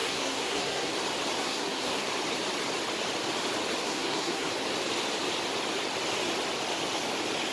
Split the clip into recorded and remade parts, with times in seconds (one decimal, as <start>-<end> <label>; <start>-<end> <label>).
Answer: 0.0-0.9 remade; 0.9-1.4 recorded; 1.4-2.1 remade; 2.1-3.8 recorded; 3.8-4.5 remade; 4.5-7.5 recorded

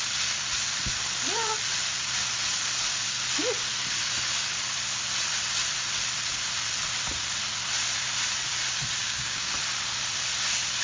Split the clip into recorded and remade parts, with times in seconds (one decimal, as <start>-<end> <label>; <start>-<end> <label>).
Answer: 0.0-9.0 recorded; 9.0-9.5 remade; 9.5-10.8 recorded

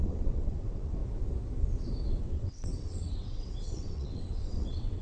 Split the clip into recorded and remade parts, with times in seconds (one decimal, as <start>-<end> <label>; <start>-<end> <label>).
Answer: 0.0-1.0 remade; 1.0-2.2 recorded; 2.2-5.0 remade

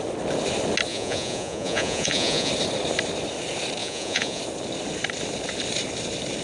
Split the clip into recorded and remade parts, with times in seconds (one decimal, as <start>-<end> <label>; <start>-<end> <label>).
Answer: 0.0-0.9 recorded; 0.9-2.5 remade; 2.5-3.8 recorded; 3.8-4.4 remade; 4.4-6.4 recorded

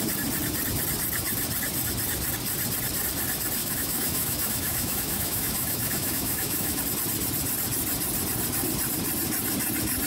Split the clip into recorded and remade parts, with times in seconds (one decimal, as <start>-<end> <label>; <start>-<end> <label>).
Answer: 0.0-3.6 recorded; 3.6-6.8 remade; 6.8-10.1 recorded

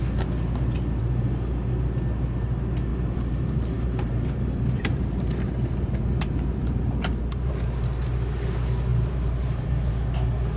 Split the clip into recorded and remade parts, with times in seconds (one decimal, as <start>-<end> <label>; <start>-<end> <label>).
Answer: 0.0-2.9 recorded; 2.9-7.5 remade; 7.5-8.9 recorded; 8.9-9.9 remade; 9.9-10.6 recorded

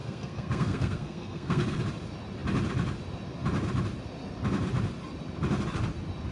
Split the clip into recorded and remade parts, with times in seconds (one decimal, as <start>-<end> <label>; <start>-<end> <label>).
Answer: 0.0-1.8 remade; 1.8-6.3 recorded

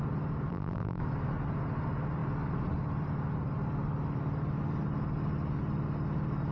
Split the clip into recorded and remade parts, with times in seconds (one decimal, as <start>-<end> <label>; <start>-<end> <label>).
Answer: 0.0-0.5 recorded; 0.5-1.0 remade; 1.0-6.5 recorded